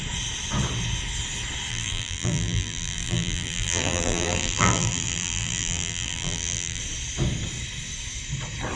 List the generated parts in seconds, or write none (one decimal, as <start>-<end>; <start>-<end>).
1.7-6.8